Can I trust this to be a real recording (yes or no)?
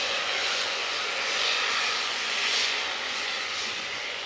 no